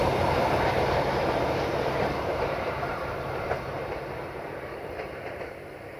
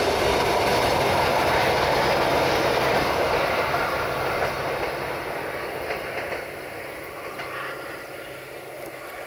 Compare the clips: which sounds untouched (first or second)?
second